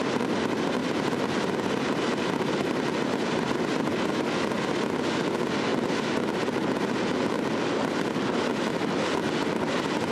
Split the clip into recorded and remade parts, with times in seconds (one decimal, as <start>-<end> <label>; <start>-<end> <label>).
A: 0.0-10.1 recorded